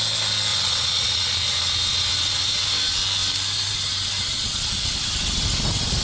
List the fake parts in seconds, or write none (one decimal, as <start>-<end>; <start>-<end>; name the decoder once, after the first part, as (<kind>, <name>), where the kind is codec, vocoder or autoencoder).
0.5-2.6 (vocoder, Vocos); 4.3-4.9